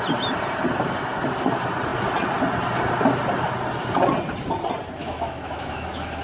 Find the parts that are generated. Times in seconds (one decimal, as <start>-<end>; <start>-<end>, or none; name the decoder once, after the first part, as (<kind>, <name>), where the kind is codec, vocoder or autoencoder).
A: 5.0-6.2 (autoencoder, DAC-VAE)